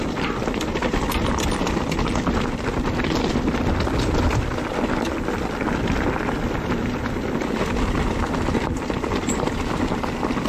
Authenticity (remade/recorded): recorded